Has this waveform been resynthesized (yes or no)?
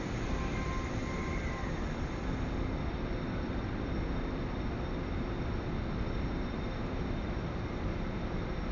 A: no